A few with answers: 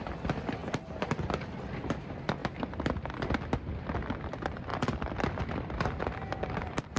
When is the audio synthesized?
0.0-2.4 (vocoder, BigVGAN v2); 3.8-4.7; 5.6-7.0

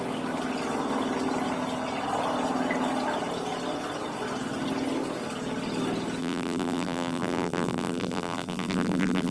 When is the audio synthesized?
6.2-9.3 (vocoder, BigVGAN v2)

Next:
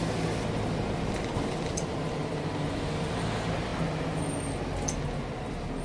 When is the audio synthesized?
0.0-1.9 (vocoder, BigVGAN v2)

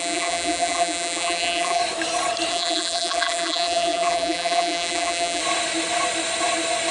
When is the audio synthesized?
0.0-1.8 (vocoder, BigVGAN v2); 2.5-5.4